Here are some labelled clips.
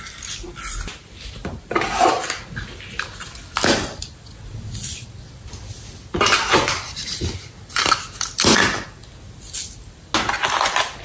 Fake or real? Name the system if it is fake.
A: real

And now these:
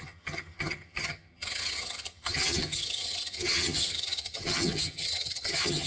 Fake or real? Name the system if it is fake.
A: fake, vocoder, HiFi-GAN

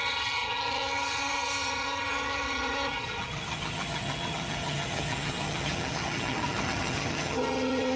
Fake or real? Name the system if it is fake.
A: fake, vocoder, HiFi-GAN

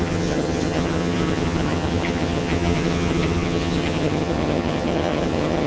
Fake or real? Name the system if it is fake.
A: fake, vocoder, HiFi-GAN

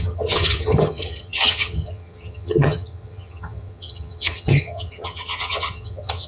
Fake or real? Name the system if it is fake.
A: fake, vocoder, HiFi-GAN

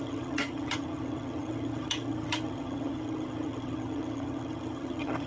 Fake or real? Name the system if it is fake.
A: fake, vocoder, HiFi-GAN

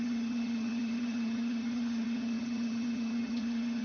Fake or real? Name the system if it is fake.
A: fake, vocoder, HiFi-GAN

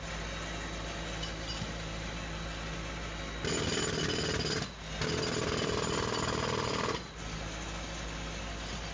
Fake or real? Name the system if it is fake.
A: real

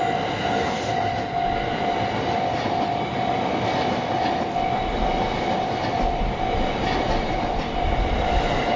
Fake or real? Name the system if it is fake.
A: real